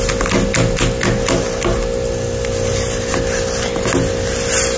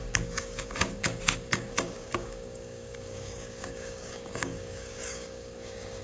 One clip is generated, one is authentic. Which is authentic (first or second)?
first